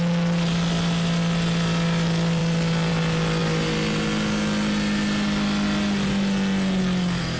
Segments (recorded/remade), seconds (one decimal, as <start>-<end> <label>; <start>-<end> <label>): 0.0-7.4 recorded